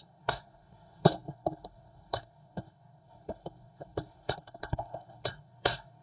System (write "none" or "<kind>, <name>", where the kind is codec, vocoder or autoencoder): codec, SNAC